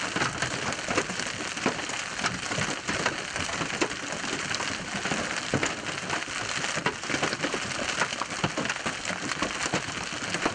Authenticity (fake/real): real